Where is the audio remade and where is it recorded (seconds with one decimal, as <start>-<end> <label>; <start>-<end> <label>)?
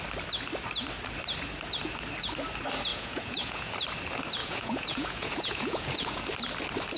0.0-2.9 recorded; 2.9-3.7 remade; 3.7-4.4 recorded; 4.4-6.3 remade; 6.3-7.0 recorded